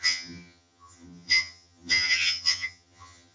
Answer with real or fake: fake